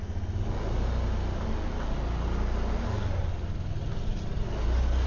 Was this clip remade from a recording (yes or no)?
no